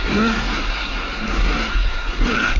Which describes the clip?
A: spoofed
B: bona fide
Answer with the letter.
A